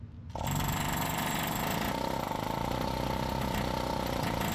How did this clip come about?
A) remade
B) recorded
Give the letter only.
B